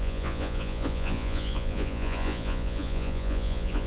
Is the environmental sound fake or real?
fake